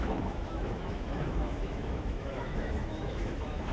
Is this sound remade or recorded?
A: remade